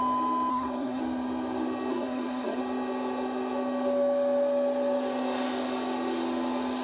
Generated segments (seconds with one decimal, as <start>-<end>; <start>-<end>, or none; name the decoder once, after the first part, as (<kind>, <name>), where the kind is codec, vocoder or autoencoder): 0.5-1.0 (codec, SNAC); 1.9-2.6